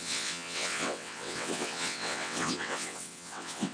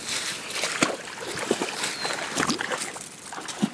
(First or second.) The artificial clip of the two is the first